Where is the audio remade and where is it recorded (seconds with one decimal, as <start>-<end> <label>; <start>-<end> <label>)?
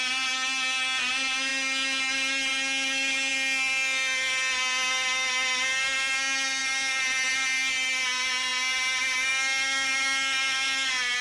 0.0-11.2 recorded